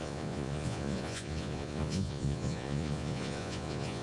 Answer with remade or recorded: remade